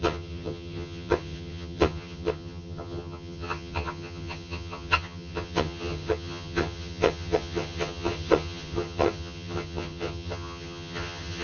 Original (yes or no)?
no